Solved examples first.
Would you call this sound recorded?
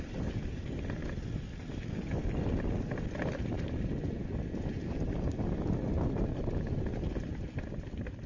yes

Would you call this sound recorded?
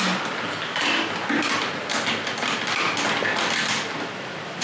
yes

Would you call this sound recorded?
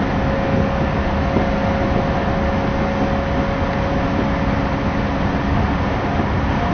yes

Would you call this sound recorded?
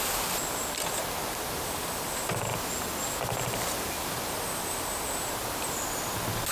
yes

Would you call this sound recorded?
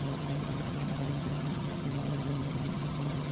no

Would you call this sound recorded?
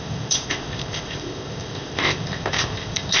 no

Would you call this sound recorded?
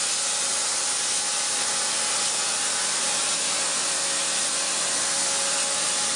yes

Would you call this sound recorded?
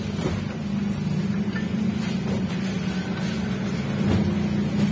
yes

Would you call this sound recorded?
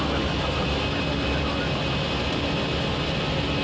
yes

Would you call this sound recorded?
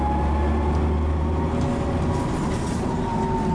yes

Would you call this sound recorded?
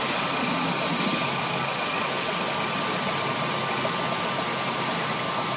yes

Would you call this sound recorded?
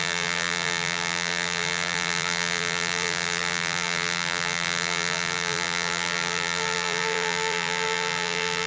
no